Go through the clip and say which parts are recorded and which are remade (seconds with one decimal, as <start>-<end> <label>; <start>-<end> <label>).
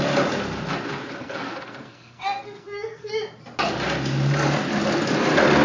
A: 0.0-1.2 recorded; 1.2-3.1 remade; 3.1-5.6 recorded